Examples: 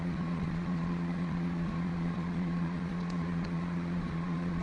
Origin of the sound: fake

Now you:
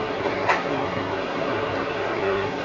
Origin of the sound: fake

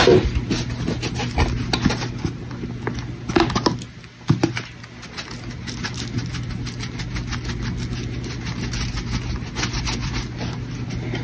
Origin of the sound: real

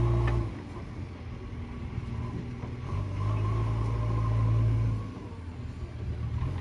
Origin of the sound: real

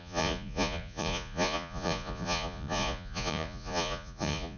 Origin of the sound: fake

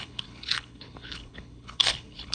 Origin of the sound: fake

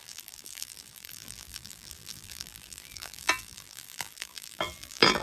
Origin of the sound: fake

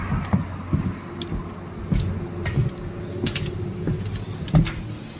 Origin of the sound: real